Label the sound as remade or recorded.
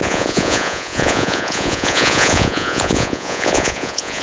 remade